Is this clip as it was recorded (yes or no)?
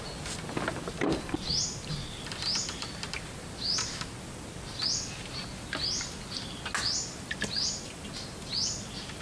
yes